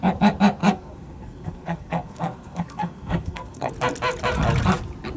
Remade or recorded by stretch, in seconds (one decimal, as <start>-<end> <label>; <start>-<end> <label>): 0.0-0.6 recorded; 0.6-3.7 remade; 3.7-5.2 recorded

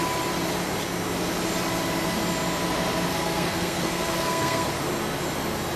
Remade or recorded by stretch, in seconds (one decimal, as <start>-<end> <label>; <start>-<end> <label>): 0.0-3.1 recorded; 3.1-4.7 remade; 4.7-5.8 recorded

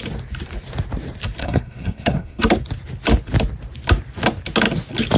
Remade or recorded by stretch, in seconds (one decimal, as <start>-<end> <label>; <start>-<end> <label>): 0.0-1.4 recorded; 1.4-2.4 remade; 2.4-5.2 recorded

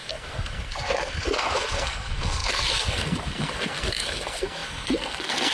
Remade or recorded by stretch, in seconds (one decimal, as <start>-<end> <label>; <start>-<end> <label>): 0.0-5.5 remade